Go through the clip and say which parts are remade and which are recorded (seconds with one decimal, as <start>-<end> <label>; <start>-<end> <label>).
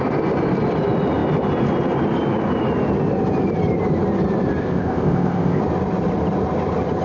0.0-4.6 recorded; 4.6-5.6 remade; 5.6-7.0 recorded